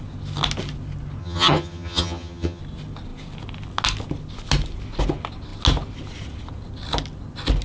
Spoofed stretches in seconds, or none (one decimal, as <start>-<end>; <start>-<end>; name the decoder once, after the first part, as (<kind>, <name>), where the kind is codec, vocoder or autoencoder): 1.2-2.6 (vocoder, HiFi-GAN)